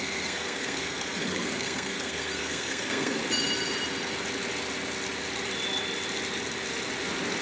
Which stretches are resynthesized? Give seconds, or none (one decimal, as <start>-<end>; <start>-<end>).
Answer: 0.0-3.2